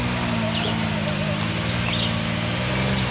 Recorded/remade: recorded